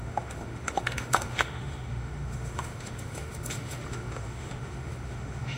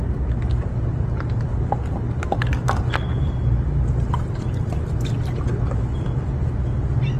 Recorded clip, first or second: second